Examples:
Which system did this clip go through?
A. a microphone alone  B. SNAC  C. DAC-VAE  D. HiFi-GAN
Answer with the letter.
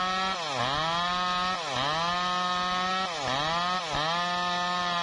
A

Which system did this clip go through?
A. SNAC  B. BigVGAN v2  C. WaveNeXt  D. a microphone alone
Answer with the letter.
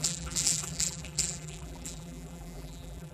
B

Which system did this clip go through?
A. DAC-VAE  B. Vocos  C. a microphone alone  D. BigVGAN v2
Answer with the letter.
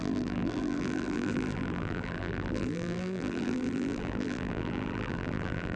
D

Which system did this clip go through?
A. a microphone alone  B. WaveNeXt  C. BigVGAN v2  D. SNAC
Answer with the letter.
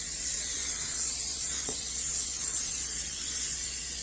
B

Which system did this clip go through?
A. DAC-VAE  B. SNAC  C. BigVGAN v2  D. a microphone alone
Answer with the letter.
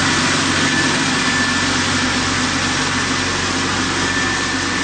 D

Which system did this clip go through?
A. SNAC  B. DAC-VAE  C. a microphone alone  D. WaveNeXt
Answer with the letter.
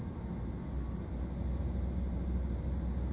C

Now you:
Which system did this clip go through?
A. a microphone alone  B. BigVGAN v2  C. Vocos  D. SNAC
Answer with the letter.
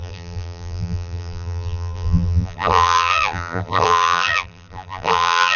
B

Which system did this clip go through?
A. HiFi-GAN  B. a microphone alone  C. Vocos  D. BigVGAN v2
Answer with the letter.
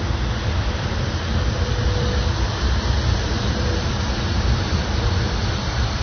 D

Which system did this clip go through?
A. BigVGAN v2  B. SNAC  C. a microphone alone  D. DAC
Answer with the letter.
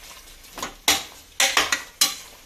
C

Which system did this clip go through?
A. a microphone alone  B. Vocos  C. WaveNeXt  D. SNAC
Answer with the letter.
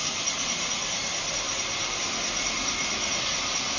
A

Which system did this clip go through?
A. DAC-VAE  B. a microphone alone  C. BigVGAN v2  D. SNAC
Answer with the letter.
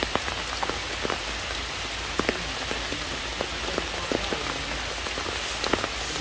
B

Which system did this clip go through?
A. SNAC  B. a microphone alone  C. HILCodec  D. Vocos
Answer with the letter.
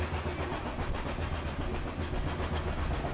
B